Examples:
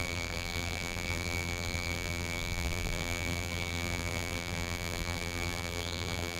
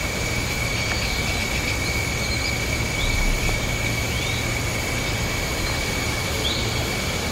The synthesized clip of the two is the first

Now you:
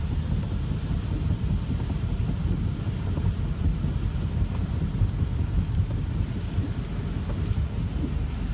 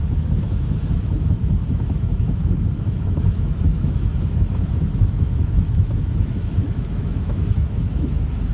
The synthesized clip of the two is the second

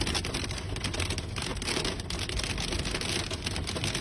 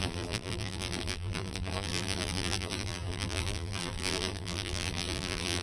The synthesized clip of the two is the second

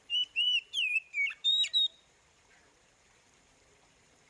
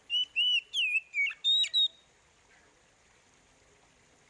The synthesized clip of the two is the first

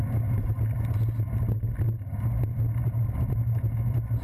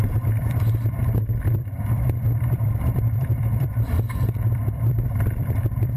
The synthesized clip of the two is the second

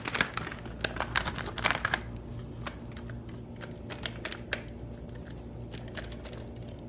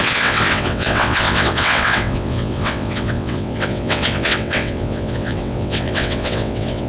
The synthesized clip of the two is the second